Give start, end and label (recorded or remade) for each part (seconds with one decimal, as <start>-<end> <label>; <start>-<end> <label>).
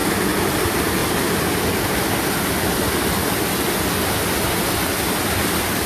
0.0-0.5 recorded; 0.5-1.0 remade; 1.0-4.5 recorded; 4.5-5.9 remade